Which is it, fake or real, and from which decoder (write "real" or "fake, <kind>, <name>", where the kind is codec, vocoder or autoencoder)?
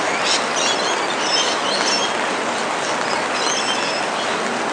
real